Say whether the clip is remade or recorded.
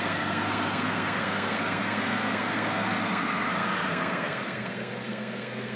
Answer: remade